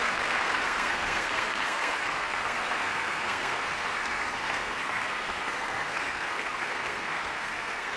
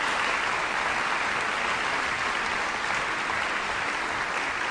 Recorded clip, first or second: second